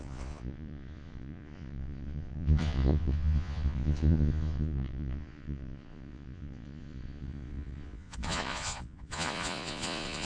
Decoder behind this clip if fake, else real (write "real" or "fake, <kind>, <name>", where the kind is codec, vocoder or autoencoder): fake, vocoder, Vocos